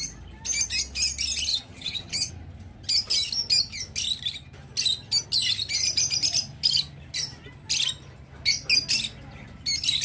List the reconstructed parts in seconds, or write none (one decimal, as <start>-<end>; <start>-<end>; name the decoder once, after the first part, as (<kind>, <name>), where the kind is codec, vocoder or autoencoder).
1.5-2.3 (vocoder, HiFi-GAN)